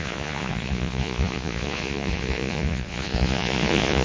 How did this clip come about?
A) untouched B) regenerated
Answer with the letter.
B